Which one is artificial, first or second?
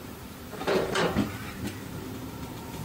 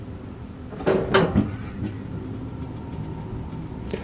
first